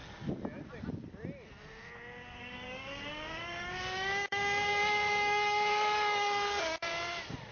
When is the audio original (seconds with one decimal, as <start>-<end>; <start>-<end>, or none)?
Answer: 0.0-2.4; 6.9-7.5